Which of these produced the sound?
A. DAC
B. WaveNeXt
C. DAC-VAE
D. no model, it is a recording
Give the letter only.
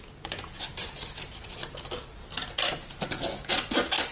D